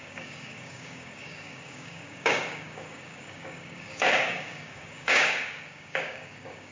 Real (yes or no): no